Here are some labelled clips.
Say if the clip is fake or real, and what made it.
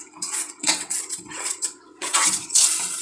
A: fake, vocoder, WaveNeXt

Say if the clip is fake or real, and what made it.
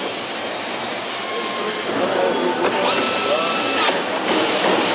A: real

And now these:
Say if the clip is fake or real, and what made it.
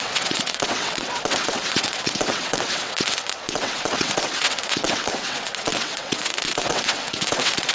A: fake, vocoder, WaveNeXt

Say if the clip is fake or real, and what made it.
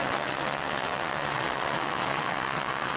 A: fake, vocoder, WaveNeXt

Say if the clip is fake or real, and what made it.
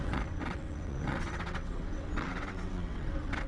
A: fake, vocoder, WaveNeXt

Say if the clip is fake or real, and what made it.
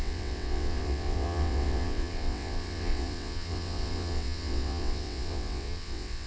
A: fake, vocoder, WaveNeXt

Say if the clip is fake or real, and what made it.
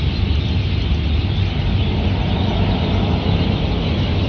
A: real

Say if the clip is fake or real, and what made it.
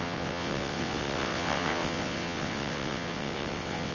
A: fake, vocoder, WaveNeXt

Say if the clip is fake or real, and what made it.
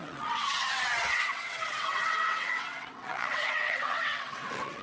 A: fake, vocoder, WaveNeXt